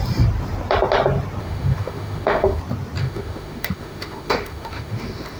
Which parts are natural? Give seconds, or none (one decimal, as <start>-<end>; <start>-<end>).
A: 0.0-1.4; 2.6-3.0